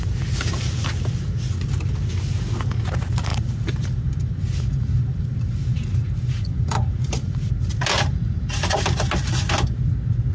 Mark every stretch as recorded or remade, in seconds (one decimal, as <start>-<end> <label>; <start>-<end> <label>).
0.0-3.3 recorded; 3.3-7.5 remade; 7.5-10.3 recorded